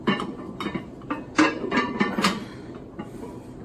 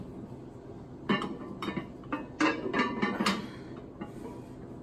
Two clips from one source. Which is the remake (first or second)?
first